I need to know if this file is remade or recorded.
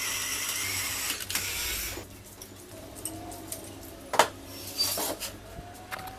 recorded